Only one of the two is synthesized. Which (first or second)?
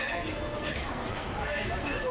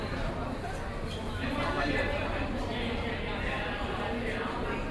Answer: first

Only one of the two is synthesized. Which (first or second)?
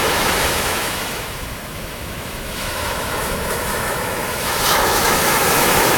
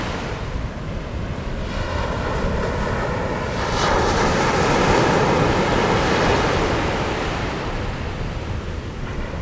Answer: first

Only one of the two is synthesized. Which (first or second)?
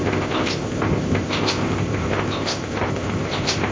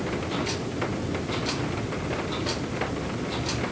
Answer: first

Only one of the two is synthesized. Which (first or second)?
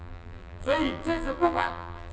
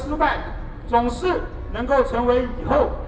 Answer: first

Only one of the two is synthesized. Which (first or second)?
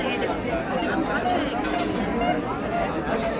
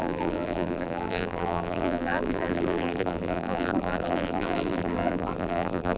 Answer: second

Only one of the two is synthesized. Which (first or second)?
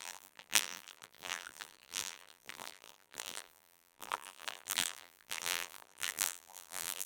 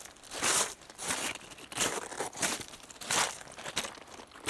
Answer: first